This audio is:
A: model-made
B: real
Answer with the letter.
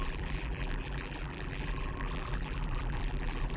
A